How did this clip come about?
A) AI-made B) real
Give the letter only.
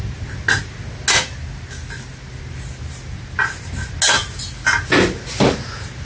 B